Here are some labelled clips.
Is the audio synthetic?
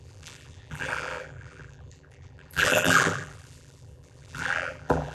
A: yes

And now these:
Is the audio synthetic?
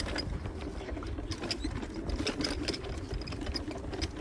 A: no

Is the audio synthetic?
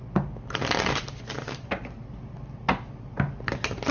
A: no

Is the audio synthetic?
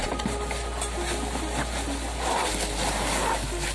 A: yes